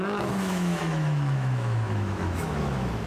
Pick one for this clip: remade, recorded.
remade